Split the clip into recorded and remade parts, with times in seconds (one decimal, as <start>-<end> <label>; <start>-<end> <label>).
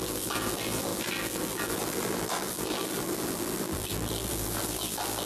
0.0-5.3 remade